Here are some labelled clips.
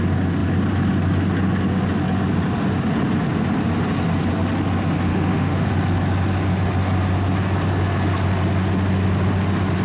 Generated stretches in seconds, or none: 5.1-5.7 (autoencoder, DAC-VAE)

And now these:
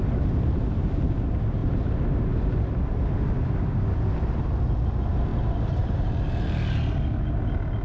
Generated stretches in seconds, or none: none

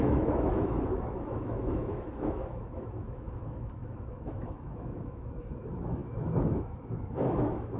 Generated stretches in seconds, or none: 0.0-7.8 (autoencoder, DAC-VAE)